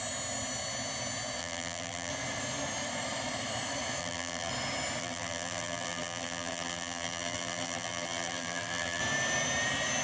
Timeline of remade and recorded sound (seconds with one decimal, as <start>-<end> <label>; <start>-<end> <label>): 0.0-1.4 recorded; 1.4-2.1 remade; 2.1-4.0 recorded; 4.0-4.5 remade; 4.5-5.0 recorded; 5.0-9.0 remade; 9.0-10.0 recorded